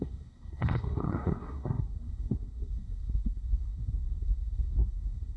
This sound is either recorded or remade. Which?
remade